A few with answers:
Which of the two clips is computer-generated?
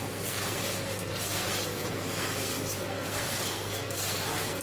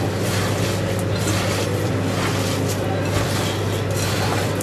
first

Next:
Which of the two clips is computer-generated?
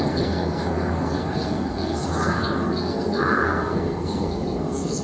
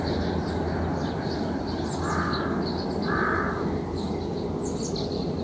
first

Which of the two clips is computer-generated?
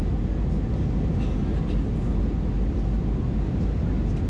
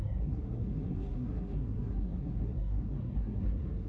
second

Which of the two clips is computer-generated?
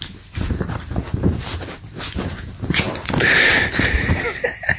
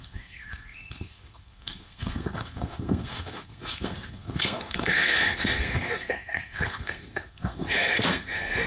second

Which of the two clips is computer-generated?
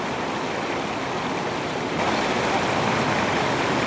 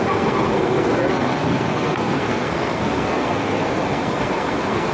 second